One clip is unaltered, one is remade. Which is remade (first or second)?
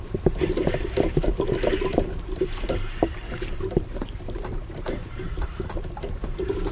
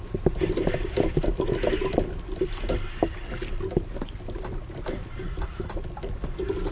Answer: first